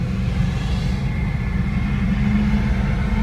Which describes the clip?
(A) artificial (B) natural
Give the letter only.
B